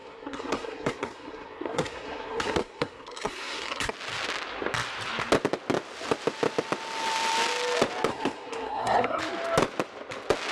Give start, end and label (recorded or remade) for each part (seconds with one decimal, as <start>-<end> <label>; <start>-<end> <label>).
0.0-3.9 remade; 3.9-8.1 recorded; 8.1-9.2 remade; 9.2-10.5 recorded